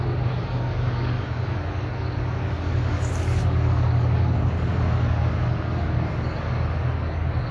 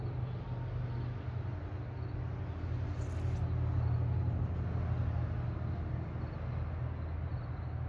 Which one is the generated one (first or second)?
first